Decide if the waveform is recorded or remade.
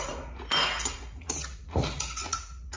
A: remade